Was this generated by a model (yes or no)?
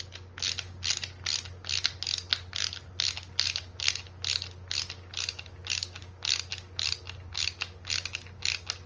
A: no